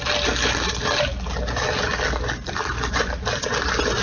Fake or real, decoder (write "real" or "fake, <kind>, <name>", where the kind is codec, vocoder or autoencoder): real